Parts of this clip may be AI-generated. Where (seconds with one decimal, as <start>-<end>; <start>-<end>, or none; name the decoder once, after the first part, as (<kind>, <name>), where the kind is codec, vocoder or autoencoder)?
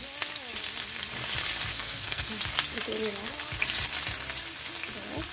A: 1.7-2.3 (codec, SNAC)